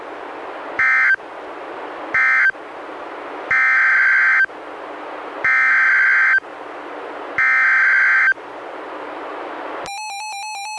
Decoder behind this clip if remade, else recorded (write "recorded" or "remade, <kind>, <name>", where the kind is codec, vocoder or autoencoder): recorded